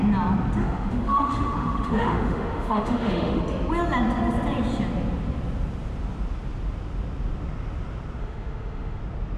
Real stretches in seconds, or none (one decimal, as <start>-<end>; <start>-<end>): 0.0-0.6; 3.4-8.2; 9.0-9.4